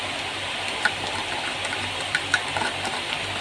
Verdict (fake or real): real